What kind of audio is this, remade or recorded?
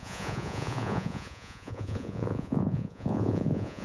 remade